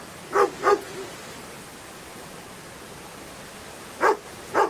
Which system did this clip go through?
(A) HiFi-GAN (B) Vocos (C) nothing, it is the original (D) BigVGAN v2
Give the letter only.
C